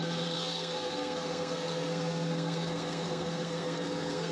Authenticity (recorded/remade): remade